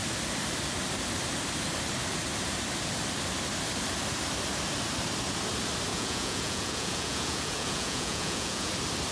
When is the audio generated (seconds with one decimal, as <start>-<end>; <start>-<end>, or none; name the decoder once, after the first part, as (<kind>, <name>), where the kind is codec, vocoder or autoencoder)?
5.9-8.7 (vocoder, Vocos)